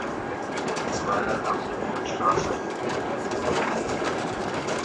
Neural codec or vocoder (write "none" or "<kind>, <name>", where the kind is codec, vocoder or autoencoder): codec, DAC